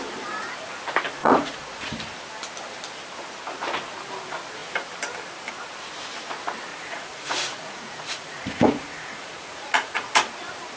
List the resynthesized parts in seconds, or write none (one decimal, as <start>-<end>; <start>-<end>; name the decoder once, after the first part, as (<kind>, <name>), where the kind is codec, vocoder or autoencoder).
1.2-2.0 (vocoder, Vocos); 6.7-10.1